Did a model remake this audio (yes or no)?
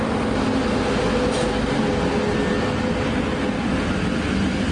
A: no